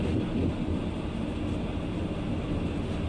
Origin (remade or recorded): recorded